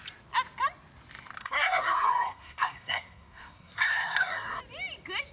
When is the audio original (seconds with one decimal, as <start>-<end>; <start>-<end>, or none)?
0.0-1.4; 4.6-5.3

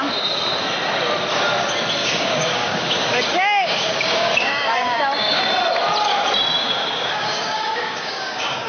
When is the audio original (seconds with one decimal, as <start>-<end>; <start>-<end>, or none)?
0.0-2.0; 5.4-6.6

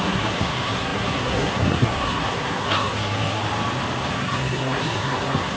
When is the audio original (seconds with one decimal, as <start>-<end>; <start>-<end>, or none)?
3.4-4.1

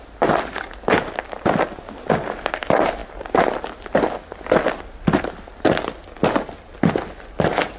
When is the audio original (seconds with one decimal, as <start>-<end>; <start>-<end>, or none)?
0.0-7.8

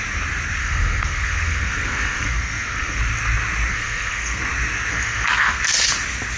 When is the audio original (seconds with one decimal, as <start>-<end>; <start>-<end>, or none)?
0.0-0.6; 3.0-3.7; 4.4-4.9; 5.6-6.4

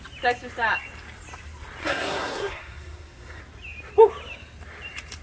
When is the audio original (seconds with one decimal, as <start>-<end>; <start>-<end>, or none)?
0.0-1.8; 3.4-5.2

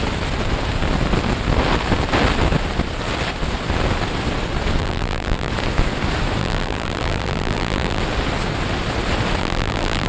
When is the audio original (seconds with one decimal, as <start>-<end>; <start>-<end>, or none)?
0.0-4.8; 5.5-6.4; 8.0-9.4

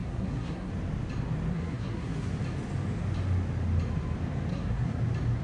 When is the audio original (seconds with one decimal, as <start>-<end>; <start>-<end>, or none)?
0.7-1.5; 2.3-4.5; 5.0-5.4